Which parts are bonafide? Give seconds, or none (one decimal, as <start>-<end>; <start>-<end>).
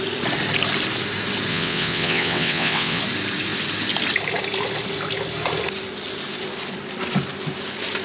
0.0-1.5; 3.0-8.0